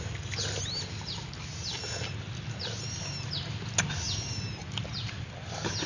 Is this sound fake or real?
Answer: real